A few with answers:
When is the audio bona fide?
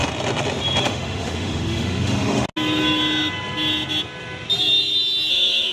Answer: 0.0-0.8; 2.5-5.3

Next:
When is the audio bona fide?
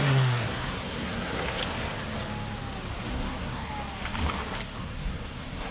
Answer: 1.6-3.1; 3.7-4.8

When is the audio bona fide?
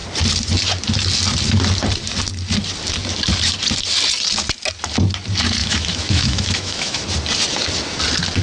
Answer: 0.0-5.6; 7.0-8.4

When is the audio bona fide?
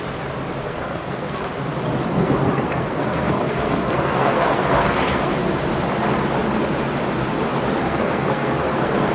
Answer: 0.0-0.6; 1.4-2.1; 5.3-7.8